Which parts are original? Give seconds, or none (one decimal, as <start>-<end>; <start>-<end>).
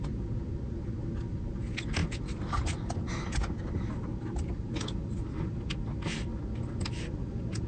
0.0-7.7